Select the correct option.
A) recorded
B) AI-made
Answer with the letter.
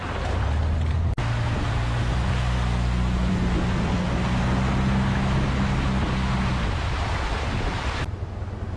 A